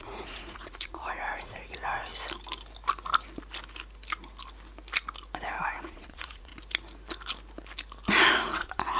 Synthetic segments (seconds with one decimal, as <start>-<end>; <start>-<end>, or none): 0.0-2.1; 5.6-6.5; 8.3-9.0